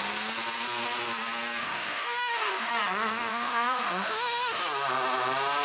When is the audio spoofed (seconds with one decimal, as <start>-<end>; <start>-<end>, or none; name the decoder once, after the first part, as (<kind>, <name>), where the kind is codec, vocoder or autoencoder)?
1.6-2.7 (autoencoder, DAC-VAE); 3.3-4.6